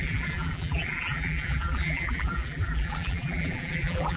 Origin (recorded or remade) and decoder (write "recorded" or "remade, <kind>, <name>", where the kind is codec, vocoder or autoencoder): remade, vocoder, BigVGAN v2